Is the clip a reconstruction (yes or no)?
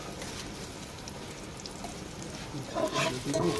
no